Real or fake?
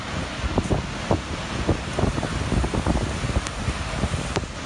real